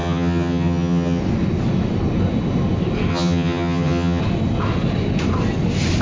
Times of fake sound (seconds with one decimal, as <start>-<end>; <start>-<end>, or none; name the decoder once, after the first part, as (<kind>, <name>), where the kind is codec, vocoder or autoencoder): 0.0-1.2 (vocoder, HiFi-GAN); 3.1-4.2